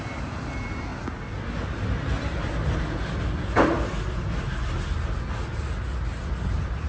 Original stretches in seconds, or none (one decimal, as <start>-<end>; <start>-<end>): 0.0-6.9